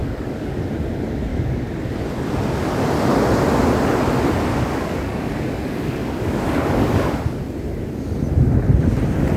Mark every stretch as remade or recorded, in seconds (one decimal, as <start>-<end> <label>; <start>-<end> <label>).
0.0-0.6 remade; 0.6-1.3 recorded; 1.3-1.9 remade; 1.9-4.5 recorded; 4.5-7.2 remade; 7.2-9.4 recorded